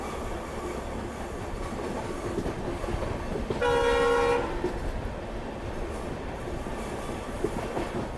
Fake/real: real